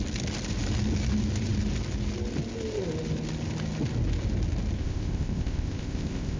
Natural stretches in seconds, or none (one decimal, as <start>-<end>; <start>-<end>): 0.0-4.8